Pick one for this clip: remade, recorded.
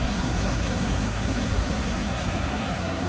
remade